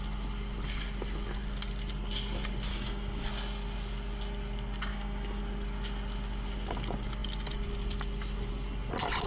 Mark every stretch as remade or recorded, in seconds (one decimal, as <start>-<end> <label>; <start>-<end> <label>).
0.0-2.7 recorded; 2.7-3.3 remade; 3.3-4.9 recorded; 4.9-5.4 remade; 5.4-9.3 recorded